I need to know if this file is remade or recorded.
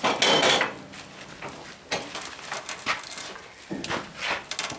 recorded